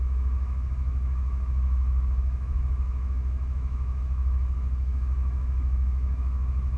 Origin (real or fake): fake